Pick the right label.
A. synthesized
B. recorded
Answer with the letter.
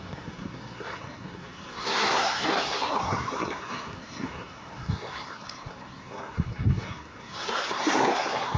A